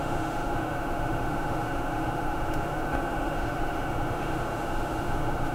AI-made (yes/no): yes